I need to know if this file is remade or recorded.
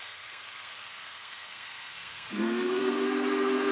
remade